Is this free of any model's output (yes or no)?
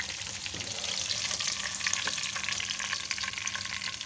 yes